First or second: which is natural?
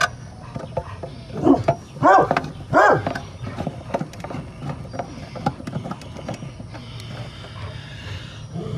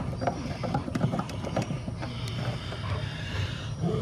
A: first